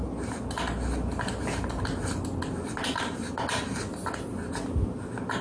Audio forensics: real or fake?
real